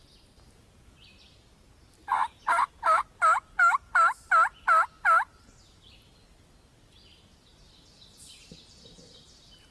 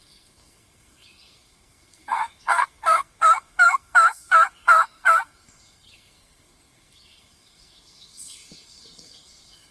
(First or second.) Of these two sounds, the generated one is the second